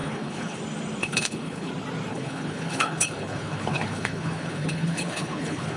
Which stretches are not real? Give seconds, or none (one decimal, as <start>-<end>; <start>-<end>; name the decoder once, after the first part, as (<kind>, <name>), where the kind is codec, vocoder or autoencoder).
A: 0.0-0.6 (codec, HILCodec); 1.0-1.7; 2.1-5.8